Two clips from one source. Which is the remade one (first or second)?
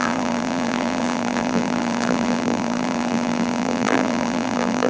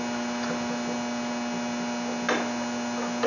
first